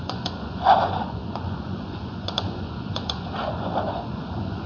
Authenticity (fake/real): fake